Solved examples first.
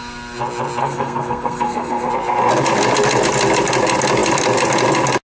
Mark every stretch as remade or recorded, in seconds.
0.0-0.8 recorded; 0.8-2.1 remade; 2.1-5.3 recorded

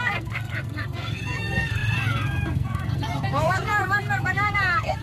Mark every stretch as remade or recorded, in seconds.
0.0-5.0 remade

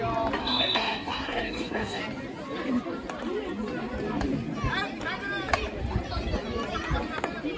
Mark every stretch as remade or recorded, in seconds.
0.0-0.4 recorded; 0.4-2.0 remade; 2.0-7.6 recorded

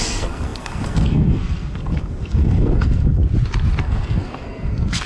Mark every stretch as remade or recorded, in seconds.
0.0-3.2 remade; 3.2-3.8 recorded; 3.8-5.1 remade

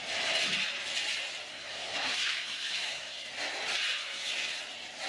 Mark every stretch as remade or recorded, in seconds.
0.0-1.5 recorded; 1.5-3.3 remade; 3.3-4.0 recorded; 4.0-4.6 remade; 4.6-5.1 recorded

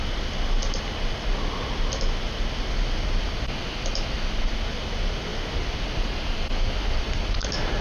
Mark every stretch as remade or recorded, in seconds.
0.0-7.8 recorded

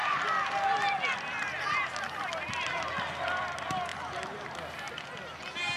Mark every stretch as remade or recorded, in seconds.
0.0-5.8 recorded